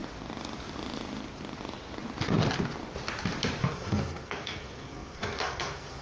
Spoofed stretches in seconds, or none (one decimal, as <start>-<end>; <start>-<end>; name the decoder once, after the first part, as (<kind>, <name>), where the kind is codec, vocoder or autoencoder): 3.6-6.0 (codec, SNAC)